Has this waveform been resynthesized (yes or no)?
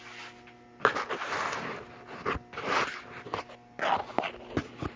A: no